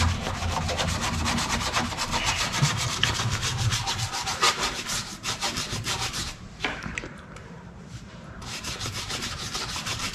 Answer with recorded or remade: remade